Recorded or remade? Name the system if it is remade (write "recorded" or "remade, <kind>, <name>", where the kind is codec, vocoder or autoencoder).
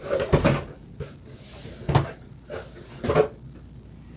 recorded